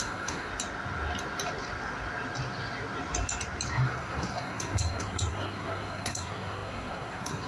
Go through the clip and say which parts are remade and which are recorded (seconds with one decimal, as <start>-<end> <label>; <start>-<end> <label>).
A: 0.0-0.5 remade; 0.5-3.7 recorded; 3.7-7.5 remade